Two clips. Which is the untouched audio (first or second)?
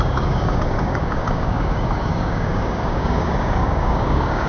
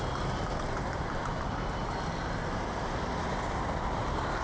second